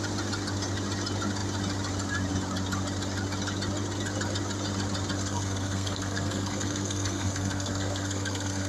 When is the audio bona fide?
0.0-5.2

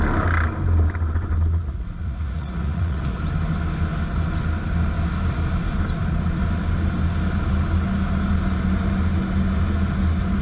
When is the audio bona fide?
0.0-1.5; 3.2-10.4

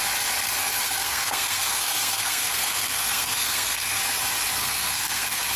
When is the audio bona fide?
0.0-0.6; 4.0-4.6

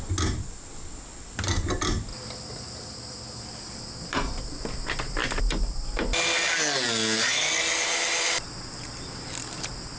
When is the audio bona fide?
0.0-2.1; 4.7-10.0

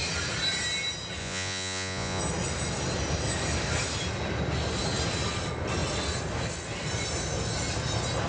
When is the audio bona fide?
0.0-1.2; 2.2-8.3

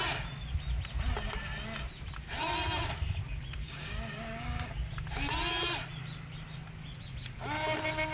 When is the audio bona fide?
0.0-3.6; 4.9-8.1

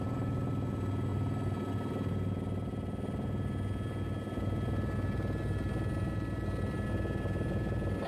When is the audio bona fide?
0.0-8.1

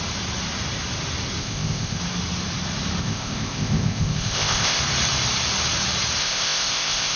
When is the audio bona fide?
0.0-1.4; 2.0-3.0; 4.8-6.2